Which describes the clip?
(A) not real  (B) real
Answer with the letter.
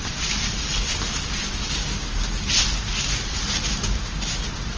B